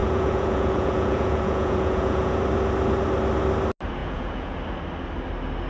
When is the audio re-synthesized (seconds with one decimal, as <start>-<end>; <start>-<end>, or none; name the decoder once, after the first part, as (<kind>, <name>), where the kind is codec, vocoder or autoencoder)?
0.0-2.4 (vocoder, Vocos); 4.0-4.6

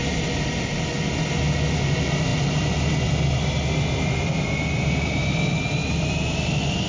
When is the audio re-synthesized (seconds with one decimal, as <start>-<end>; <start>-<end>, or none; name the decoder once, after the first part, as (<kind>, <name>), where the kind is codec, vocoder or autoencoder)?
none

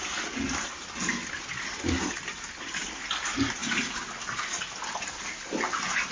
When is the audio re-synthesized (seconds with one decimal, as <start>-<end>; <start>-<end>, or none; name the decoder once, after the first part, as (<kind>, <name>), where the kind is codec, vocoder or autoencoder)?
none

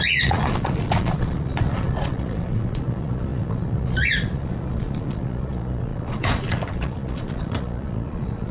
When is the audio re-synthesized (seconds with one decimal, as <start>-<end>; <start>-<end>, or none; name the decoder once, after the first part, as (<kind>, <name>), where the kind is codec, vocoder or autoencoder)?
0.0-8.5 (vocoder, Vocos)

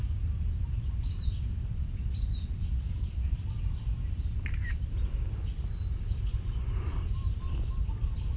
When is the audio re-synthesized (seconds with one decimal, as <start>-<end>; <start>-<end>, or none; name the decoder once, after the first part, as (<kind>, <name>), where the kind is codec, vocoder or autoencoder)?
6.3-6.9 (vocoder, Vocos)

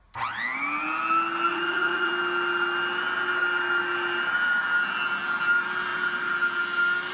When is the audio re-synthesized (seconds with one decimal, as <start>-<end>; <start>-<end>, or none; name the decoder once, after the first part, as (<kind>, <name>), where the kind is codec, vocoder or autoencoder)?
1.5-2.1 (vocoder, Vocos)